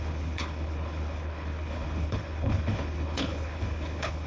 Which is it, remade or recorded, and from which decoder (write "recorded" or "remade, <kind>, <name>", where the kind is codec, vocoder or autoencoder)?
remade, codec, HILCodec